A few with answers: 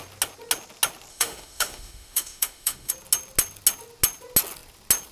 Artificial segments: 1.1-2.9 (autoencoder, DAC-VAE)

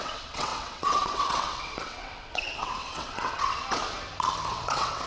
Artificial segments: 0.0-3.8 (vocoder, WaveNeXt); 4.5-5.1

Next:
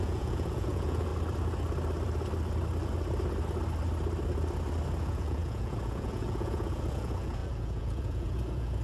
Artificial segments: 0.0-1.1 (vocoder, Vocos); 5.0-8.8